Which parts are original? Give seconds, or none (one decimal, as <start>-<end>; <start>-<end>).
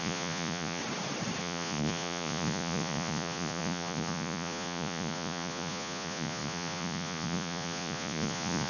0.8-1.4